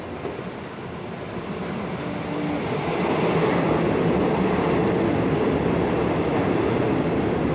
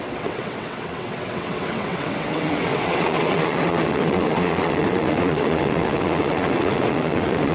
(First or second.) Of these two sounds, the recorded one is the first